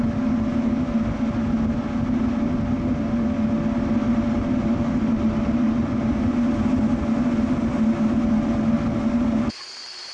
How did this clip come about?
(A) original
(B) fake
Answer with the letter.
A